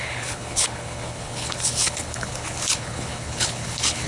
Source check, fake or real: fake